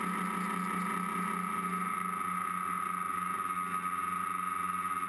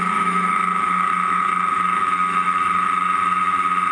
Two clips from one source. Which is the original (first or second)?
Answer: first